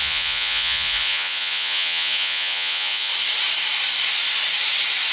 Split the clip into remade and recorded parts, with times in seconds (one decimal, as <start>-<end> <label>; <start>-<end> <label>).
0.0-3.1 remade; 3.1-5.1 recorded